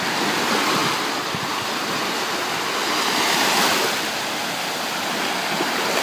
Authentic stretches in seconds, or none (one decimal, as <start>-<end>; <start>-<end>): 0.0-6.0